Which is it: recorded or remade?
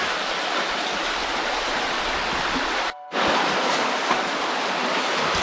recorded